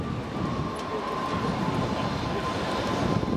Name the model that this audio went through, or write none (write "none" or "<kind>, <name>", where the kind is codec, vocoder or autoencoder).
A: none